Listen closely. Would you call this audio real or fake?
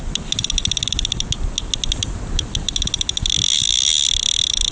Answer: real